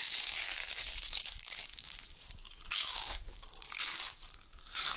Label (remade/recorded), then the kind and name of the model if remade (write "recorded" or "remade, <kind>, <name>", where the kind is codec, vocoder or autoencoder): remade, codec, DAC